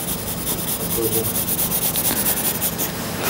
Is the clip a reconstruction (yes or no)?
no